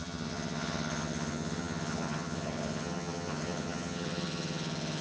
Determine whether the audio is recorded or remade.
remade